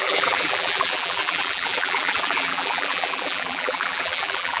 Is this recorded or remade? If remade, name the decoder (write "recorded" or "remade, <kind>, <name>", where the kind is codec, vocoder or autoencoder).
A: remade, vocoder, BigVGAN v2